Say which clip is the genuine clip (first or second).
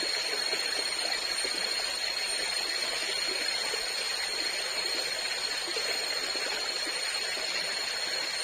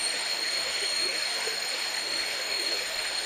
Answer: first